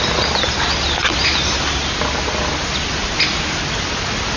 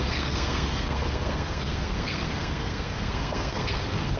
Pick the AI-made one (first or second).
second